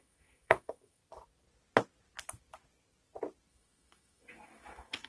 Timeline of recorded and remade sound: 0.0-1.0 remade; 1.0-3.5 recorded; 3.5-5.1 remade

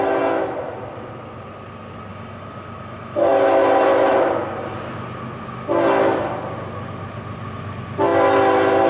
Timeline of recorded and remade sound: 0.0-2.1 recorded; 2.1-3.3 remade; 3.3-8.9 recorded

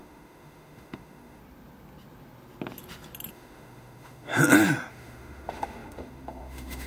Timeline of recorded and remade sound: 0.0-1.4 remade; 1.4-3.3 recorded; 3.3-4.3 remade; 4.3-4.9 recorded; 4.9-6.9 remade

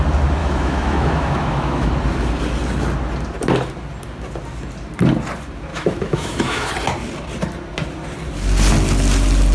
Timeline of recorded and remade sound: 0.0-0.4 recorded; 0.4-1.9 remade; 1.9-5.7 recorded; 5.7-6.7 remade; 6.7-9.5 recorded

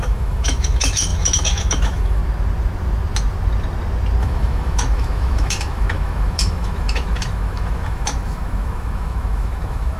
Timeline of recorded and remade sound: 0.0-2.2 remade; 2.2-4.2 recorded; 4.2-10.0 remade